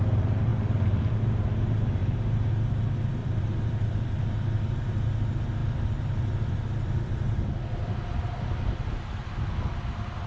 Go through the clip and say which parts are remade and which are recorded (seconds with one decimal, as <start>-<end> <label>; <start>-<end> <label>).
0.0-0.5 recorded; 0.5-1.1 remade; 1.1-3.2 recorded; 3.2-4.2 remade; 4.2-5.6 recorded; 5.6-7.1 remade; 7.1-10.3 recorded